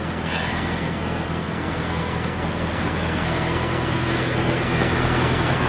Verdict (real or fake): fake